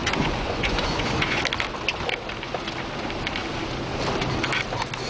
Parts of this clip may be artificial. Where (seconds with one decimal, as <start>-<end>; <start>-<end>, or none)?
0.0-1.4